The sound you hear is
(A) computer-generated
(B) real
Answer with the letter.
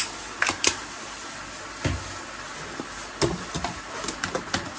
B